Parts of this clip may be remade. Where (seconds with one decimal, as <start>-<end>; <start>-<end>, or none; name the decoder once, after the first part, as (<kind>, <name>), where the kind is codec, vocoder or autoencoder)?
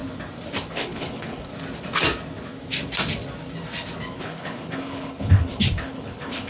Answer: 0.7-1.5 (codec, HILCodec); 4.2-6.5